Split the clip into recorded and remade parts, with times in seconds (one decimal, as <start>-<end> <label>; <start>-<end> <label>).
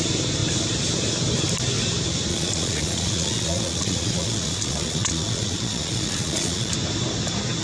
0.0-2.3 recorded; 2.3-6.7 remade; 6.7-7.6 recorded